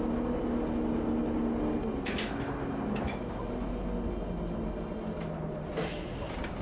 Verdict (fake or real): real